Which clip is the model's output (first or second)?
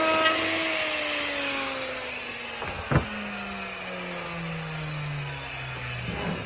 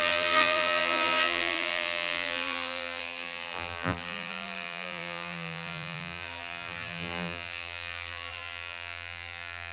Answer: second